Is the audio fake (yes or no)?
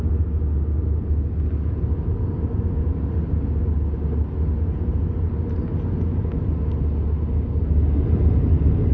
no